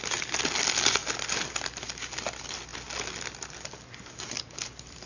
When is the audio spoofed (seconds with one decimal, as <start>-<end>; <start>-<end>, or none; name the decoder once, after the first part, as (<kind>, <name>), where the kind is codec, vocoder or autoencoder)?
none